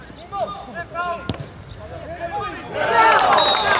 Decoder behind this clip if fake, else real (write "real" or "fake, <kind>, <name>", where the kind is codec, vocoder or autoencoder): real